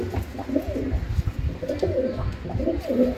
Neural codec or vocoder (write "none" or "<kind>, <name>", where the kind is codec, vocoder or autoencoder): none